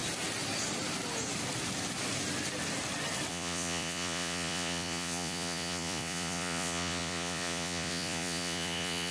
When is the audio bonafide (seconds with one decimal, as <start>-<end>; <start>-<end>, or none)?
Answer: 0.0-3.3